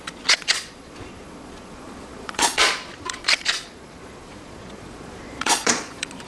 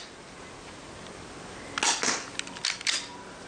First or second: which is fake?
first